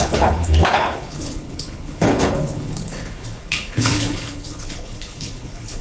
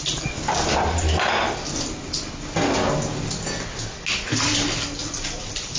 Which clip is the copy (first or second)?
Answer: first